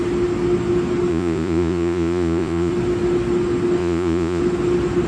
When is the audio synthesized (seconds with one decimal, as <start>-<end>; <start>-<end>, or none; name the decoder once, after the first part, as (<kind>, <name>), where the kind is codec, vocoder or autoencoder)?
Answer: 1.1-2.7 (vocoder, Vocos); 3.8-4.4